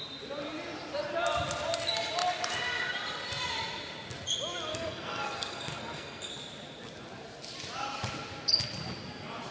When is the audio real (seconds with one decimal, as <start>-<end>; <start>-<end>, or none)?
0.0-4.7; 6.3-9.5